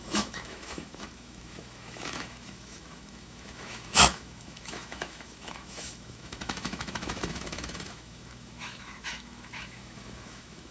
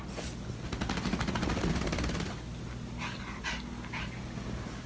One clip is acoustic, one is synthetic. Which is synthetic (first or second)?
first